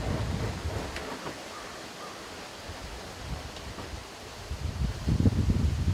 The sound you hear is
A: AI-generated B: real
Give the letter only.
B